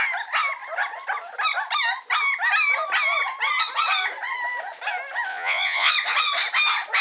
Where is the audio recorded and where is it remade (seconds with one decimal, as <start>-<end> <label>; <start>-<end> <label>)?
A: 0.0-5.3 recorded; 5.3-5.9 remade; 5.9-7.0 recorded